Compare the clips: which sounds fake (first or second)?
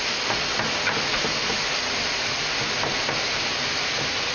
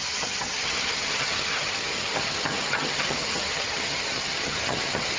second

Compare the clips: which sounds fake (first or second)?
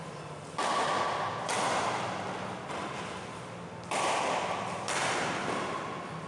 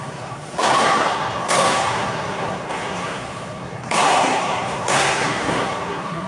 second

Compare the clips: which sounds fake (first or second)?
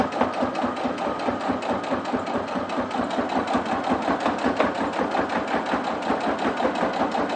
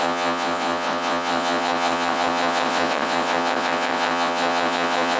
second